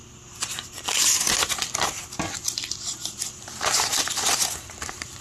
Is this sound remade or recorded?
remade